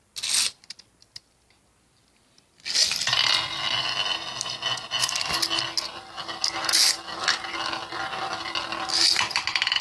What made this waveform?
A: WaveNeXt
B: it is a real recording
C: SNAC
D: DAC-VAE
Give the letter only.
B